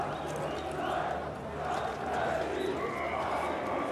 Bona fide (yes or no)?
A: yes